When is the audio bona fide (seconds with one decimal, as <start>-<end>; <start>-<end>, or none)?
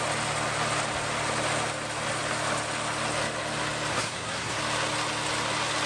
0.0-3.9; 4.6-5.9